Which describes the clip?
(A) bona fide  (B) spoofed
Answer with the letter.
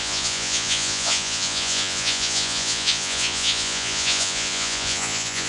B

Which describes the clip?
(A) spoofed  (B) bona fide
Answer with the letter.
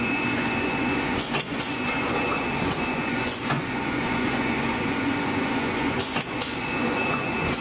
A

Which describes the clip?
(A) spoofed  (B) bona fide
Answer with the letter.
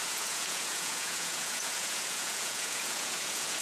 A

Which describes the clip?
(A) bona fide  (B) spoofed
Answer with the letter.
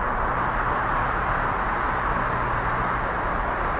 A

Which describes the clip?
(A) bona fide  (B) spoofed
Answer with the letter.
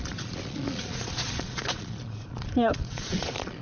B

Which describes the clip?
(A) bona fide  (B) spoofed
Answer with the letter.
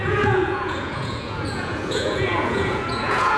B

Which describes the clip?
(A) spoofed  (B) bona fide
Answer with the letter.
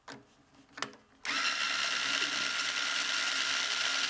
B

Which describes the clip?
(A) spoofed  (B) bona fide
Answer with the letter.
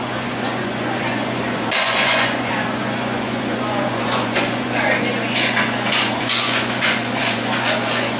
A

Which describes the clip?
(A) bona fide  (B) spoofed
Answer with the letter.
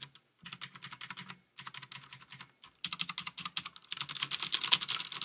A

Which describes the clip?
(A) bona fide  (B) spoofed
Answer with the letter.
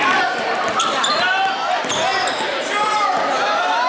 A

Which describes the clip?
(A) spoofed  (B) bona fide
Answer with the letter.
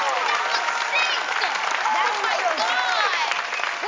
B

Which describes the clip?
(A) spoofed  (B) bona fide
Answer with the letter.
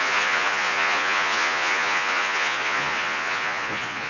A